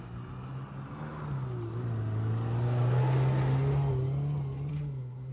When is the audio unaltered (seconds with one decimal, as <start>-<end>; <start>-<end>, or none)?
0.0-4.7